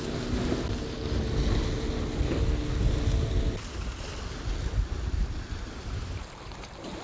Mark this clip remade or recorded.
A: recorded